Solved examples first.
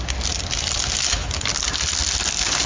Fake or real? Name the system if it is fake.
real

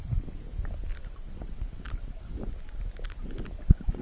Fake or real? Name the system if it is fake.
real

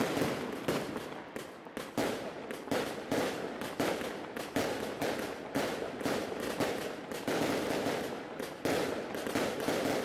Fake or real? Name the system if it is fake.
real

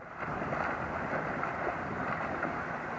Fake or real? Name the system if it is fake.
real